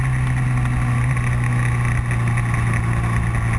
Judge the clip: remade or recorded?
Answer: recorded